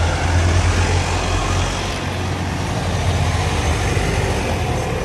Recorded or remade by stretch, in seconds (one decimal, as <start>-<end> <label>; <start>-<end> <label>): 0.0-5.0 recorded